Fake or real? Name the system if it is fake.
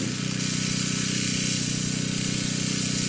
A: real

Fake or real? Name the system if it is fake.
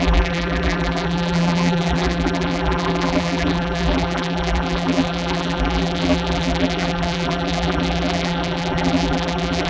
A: fake, vocoder, BigVGAN v2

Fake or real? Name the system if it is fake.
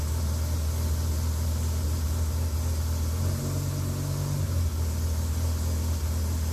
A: real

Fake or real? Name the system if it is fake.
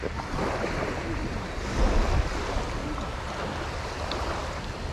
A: real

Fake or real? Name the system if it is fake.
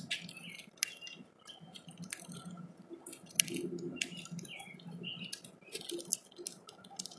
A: real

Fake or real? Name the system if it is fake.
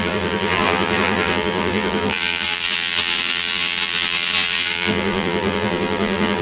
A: fake, vocoder, BigVGAN v2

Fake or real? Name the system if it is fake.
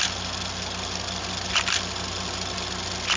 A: real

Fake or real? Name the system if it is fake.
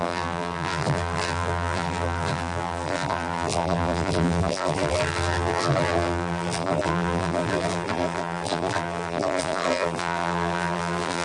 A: fake, vocoder, BigVGAN v2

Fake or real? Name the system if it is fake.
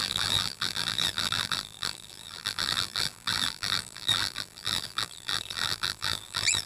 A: fake, vocoder, BigVGAN v2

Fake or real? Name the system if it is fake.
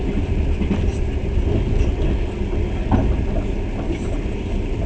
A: real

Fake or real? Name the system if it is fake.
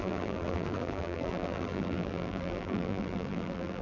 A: fake, vocoder, BigVGAN v2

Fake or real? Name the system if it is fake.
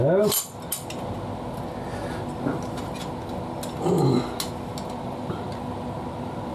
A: real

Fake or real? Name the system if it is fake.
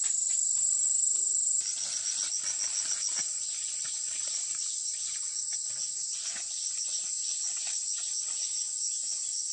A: real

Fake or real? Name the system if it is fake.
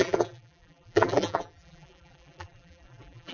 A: fake, vocoder, BigVGAN v2